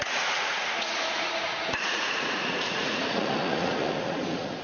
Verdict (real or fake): fake